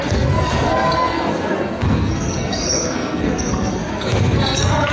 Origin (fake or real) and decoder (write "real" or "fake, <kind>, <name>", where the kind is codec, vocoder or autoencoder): fake, codec, SNAC